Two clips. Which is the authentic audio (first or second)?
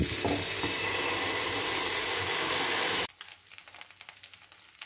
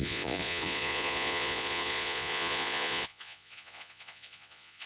first